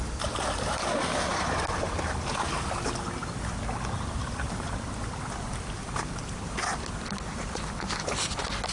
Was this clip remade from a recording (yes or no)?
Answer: no